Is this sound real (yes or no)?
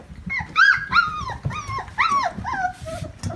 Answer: yes